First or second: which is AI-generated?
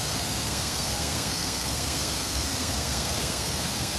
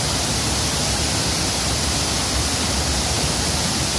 first